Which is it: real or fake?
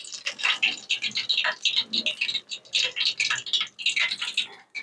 real